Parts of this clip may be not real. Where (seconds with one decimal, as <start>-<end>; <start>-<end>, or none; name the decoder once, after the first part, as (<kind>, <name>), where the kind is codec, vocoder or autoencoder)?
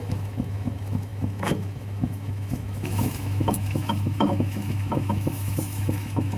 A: 0.0-6.4 (autoencoder, DAC-VAE)